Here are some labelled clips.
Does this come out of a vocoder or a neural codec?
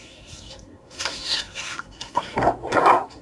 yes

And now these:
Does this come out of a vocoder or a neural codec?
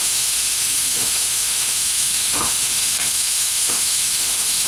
yes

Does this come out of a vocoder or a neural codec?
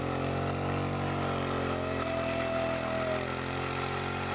no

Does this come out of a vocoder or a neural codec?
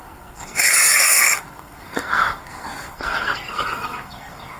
yes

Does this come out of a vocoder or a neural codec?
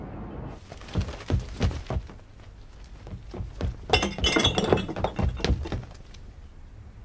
no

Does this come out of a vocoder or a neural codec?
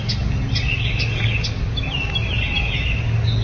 no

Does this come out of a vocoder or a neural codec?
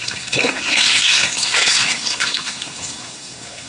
yes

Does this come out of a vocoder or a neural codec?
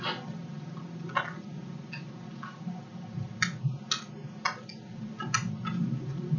no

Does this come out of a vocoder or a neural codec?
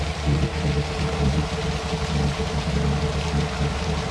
no